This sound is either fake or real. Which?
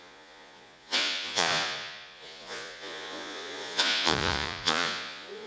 fake